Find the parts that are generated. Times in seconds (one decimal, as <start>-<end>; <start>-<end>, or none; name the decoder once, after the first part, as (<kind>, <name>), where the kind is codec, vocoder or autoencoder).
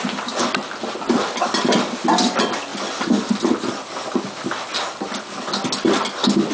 none